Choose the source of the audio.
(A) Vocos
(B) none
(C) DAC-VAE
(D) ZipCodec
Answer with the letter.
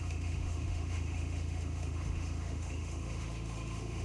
C